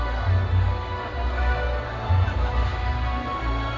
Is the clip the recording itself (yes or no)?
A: yes